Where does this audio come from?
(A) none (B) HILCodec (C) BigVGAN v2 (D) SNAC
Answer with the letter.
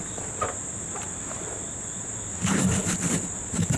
A